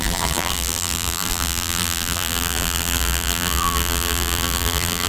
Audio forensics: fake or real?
fake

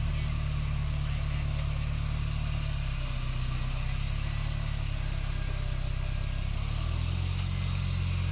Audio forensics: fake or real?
real